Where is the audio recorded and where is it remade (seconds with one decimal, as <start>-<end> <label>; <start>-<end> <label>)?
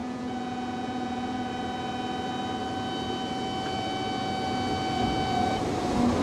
0.0-1.5 remade; 1.5-6.2 recorded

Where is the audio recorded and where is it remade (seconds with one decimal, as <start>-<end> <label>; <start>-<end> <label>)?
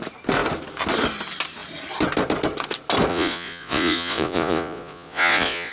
0.0-3.1 recorded; 3.1-5.7 remade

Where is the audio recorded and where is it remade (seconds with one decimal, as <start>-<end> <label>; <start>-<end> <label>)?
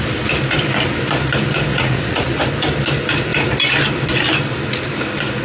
0.0-1.7 recorded; 1.7-2.4 remade; 2.4-5.4 recorded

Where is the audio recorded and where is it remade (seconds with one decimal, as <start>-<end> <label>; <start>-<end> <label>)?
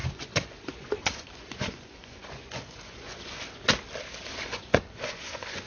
0.0-3.4 remade; 3.4-4.3 recorded; 4.3-5.7 remade